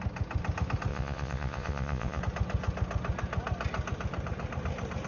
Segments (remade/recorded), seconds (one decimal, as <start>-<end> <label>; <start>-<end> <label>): 0.0-0.9 recorded; 0.9-2.2 remade; 2.2-5.1 recorded